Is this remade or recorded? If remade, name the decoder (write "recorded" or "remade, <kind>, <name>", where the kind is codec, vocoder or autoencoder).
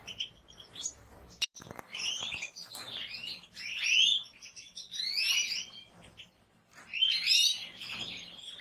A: remade, vocoder, BigVGAN v2